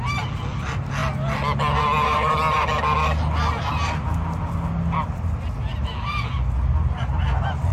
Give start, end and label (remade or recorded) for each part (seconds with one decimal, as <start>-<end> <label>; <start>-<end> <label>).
0.0-7.7 recorded